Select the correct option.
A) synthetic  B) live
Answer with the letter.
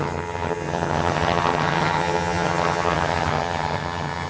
A